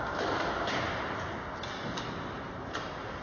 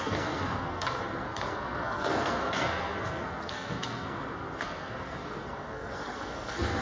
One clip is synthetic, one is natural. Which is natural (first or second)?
first